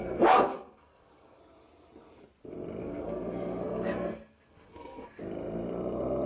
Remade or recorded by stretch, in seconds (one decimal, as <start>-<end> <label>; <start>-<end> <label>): 0.0-1.4 remade; 1.4-2.8 recorded; 2.8-5.2 remade; 5.2-6.3 recorded

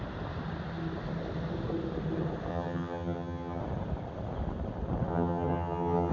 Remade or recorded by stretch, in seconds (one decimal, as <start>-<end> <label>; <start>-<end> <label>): 0.0-2.5 recorded; 2.5-3.6 remade; 3.6-5.1 recorded; 5.1-6.1 remade

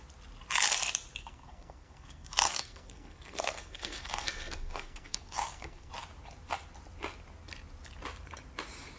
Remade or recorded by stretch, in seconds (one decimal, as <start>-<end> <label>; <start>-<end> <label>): 0.0-1.2 recorded; 1.2-5.9 remade; 5.9-9.0 recorded